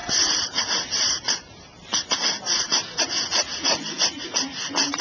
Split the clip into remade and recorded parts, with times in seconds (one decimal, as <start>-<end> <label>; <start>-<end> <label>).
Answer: 0.0-3.0 remade; 3.0-5.0 recorded